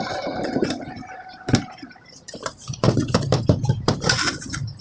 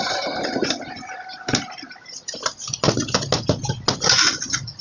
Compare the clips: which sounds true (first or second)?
second